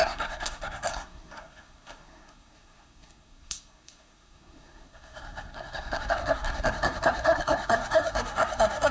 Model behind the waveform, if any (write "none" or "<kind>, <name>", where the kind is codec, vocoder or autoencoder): codec, SNAC